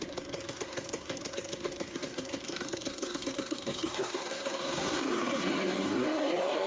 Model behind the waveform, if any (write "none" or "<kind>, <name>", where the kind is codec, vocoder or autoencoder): codec, SNAC